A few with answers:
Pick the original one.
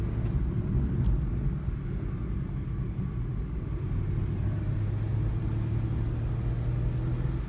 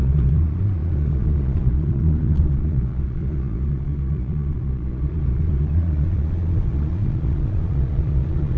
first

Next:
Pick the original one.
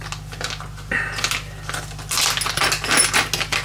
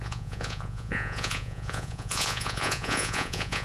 first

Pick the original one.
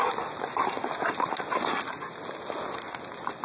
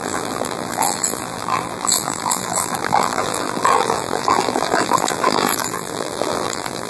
first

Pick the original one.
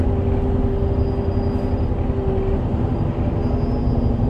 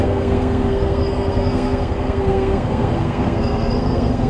first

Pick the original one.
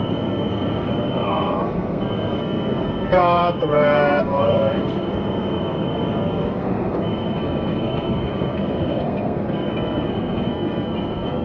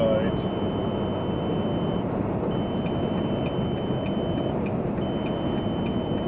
second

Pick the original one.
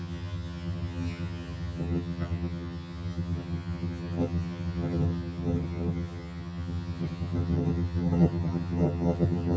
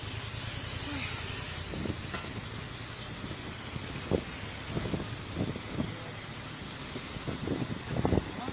second